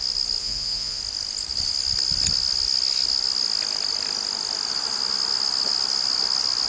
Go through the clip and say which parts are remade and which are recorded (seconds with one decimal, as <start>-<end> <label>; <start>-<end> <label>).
0.0-0.4 recorded; 0.4-1.0 remade; 1.0-6.7 recorded